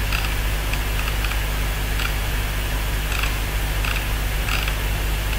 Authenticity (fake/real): real